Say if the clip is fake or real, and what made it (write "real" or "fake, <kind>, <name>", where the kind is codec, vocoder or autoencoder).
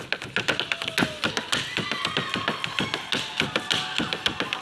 real